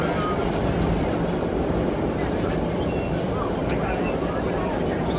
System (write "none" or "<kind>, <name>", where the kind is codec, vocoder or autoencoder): none